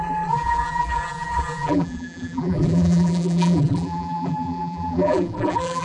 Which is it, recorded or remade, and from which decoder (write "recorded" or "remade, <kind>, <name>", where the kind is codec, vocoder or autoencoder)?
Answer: remade, vocoder, BigVGAN v2